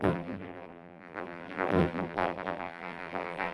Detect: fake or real fake